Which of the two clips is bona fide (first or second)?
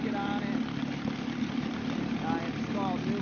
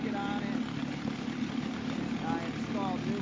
second